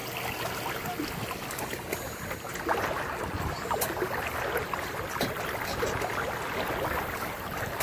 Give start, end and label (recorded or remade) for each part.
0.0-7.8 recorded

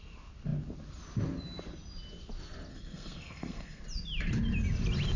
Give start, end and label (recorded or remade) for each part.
0.0-2.7 recorded; 2.7-3.8 remade; 3.8-5.2 recorded

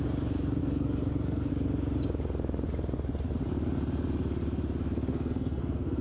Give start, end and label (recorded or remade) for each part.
0.0-0.6 recorded; 0.6-1.5 remade; 1.5-5.1 recorded; 5.1-6.0 remade

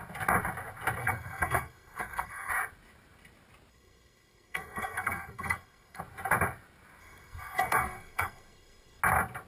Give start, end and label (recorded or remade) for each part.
0.0-1.0 recorded; 1.0-2.5 remade; 2.5-3.7 recorded; 3.7-6.0 remade; 6.0-7.0 recorded; 7.0-9.0 remade; 9.0-9.5 recorded

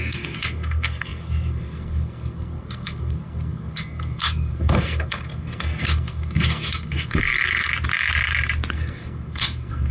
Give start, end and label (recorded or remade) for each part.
0.0-7.7 remade; 7.7-8.7 recorded; 8.7-9.9 remade

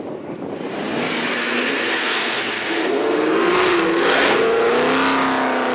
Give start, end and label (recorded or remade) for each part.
0.0-1.3 recorded; 1.3-4.7 remade; 4.7-5.7 recorded